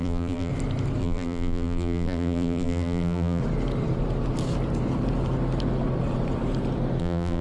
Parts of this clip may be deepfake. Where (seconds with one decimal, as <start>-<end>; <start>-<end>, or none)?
0.0-0.5; 1.0-3.4; 7.0-7.4